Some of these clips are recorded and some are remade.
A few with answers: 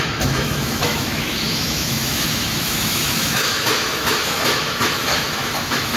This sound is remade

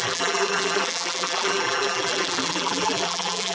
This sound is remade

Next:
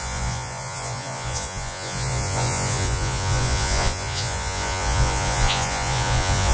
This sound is remade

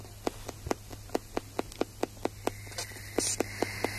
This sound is recorded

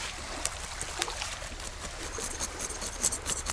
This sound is recorded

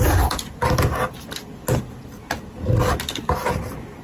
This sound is recorded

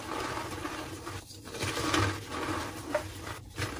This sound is recorded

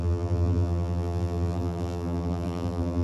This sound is remade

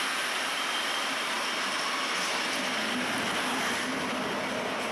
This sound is recorded